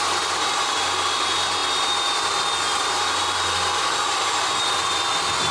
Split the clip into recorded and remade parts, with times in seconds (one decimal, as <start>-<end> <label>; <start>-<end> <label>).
0.0-5.5 recorded